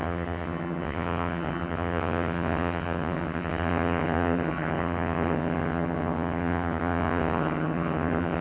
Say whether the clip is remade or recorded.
remade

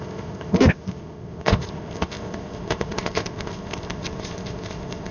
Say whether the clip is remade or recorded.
remade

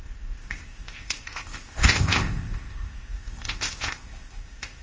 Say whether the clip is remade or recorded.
remade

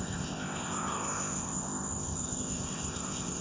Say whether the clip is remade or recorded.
remade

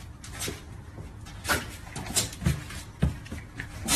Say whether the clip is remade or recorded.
recorded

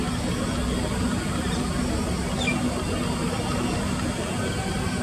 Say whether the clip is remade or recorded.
recorded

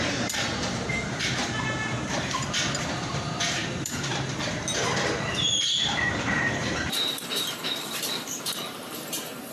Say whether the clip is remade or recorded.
remade